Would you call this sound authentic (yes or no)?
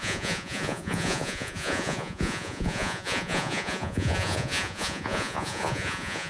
no